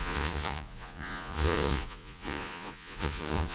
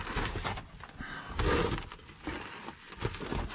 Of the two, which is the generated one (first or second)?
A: first